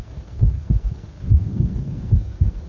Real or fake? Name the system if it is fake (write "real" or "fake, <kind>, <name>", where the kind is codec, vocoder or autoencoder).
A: fake, codec, SNAC